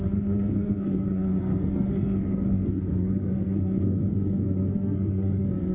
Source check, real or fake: fake